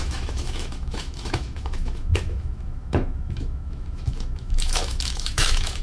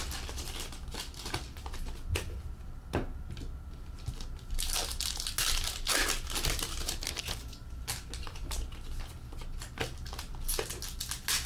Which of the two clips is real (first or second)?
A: second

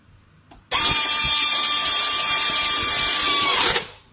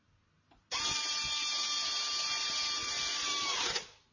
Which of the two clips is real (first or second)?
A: second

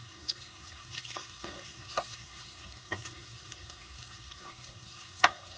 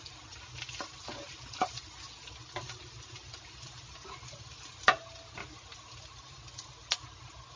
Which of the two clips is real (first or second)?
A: second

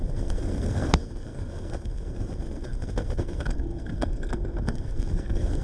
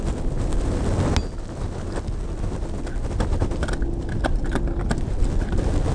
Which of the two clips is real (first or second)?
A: second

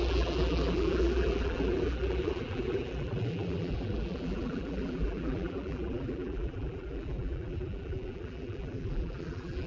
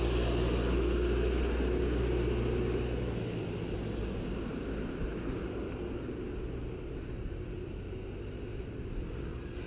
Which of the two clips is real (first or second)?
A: second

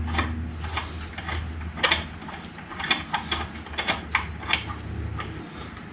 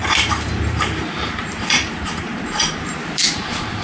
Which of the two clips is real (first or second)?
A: first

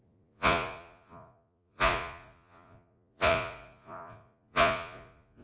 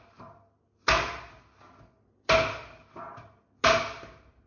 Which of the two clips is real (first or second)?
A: second